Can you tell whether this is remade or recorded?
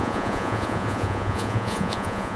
remade